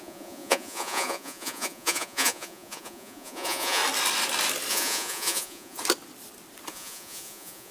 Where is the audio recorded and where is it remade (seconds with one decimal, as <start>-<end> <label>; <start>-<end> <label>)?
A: 0.0-3.8 remade; 3.8-4.7 recorded; 4.7-5.8 remade; 5.8-6.7 recorded; 6.7-7.7 remade